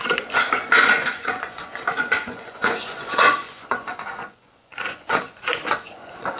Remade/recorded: remade